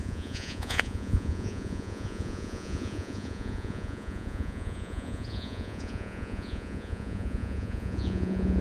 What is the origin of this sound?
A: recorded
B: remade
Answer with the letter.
B